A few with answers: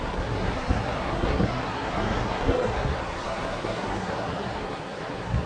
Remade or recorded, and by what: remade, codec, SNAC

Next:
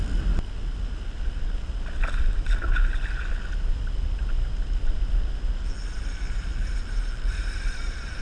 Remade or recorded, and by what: recorded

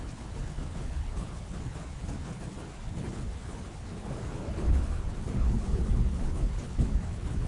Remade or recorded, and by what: remade, codec, HILCodec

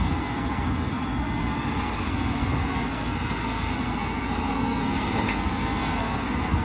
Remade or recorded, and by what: remade, codec, SNAC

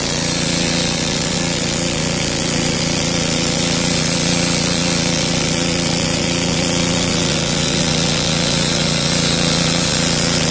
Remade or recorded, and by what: remade, vocoder, Vocos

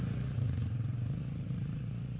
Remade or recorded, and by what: remade, vocoder, Vocos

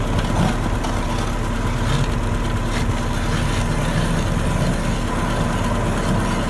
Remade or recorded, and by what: recorded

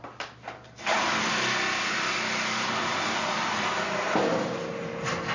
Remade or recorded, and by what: recorded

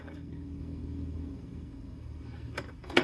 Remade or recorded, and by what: remade, codec, SNAC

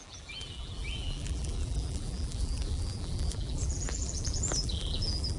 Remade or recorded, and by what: remade, vocoder, BigVGAN v2